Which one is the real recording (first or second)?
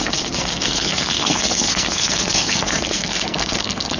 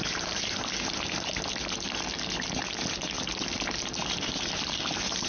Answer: second